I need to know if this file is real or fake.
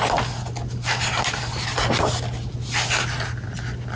real